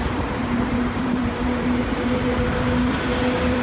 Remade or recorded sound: remade